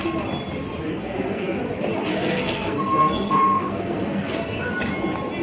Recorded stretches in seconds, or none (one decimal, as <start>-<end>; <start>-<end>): 0.0-0.9; 1.6-2.1; 4.7-5.4